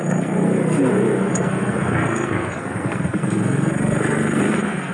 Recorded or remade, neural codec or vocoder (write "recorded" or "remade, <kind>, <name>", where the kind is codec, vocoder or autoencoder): remade, codec, SNAC